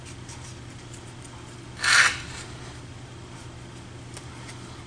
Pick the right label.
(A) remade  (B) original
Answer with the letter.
B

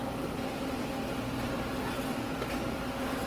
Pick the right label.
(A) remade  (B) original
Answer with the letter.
B